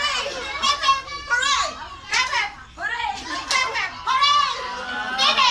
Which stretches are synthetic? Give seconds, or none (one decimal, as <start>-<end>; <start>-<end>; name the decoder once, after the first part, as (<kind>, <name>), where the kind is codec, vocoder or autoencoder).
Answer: none